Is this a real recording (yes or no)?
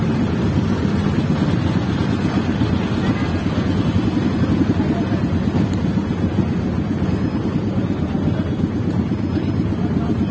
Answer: yes